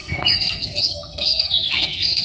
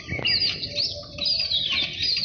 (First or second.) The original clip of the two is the second